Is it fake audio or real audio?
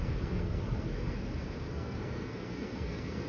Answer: fake